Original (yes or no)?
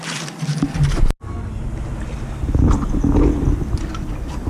yes